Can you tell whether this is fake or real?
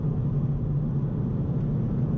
real